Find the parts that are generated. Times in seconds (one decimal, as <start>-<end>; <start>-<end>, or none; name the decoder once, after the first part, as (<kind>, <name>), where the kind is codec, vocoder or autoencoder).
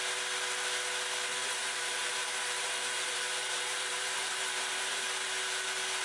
1.4-5.0 (vocoder, BigVGAN v2)